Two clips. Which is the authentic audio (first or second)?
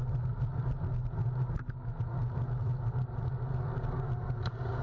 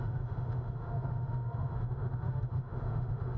first